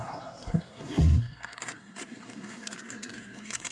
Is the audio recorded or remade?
remade